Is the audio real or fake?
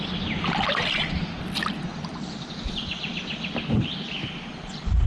real